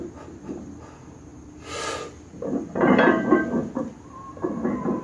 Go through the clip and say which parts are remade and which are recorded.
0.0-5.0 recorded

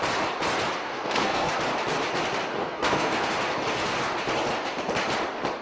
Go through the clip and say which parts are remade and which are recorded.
0.0-0.9 recorded; 0.9-1.5 remade; 1.5-2.6 recorded; 2.6-3.3 remade; 3.3-5.6 recorded

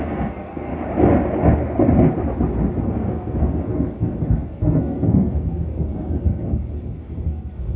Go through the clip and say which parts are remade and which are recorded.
0.0-0.7 remade; 0.7-2.8 recorded; 2.8-7.8 remade

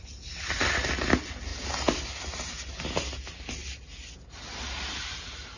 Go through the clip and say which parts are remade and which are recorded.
0.0-5.6 recorded

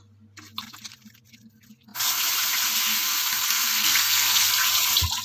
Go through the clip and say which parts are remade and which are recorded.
0.0-2.9 recorded; 2.9-4.5 remade; 4.5-5.2 recorded